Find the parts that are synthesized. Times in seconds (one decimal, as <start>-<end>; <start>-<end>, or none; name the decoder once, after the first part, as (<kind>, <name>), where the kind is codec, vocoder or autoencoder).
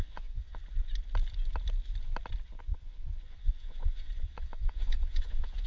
0.0-0.6 (vocoder, Vocos); 2.6-5.7